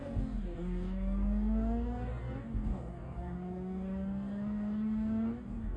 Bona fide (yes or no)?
no